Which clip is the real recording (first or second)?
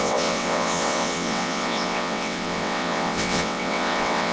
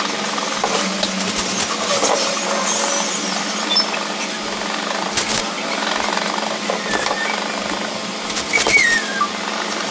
second